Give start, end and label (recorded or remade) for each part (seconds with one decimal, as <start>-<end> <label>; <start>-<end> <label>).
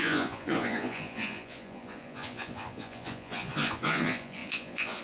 0.0-5.0 remade